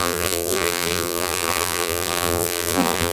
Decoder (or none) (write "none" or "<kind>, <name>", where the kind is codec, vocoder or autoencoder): vocoder, BigVGAN v2